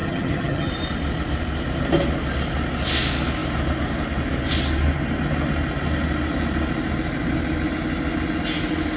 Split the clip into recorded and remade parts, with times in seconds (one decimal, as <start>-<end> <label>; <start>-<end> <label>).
0.0-0.7 remade; 0.7-9.0 recorded